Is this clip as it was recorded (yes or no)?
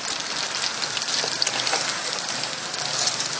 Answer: yes